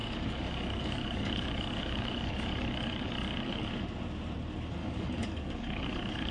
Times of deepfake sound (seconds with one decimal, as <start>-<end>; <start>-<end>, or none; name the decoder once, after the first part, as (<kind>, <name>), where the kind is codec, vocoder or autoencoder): 0.0-3.7 (codec, DAC); 4.8-6.3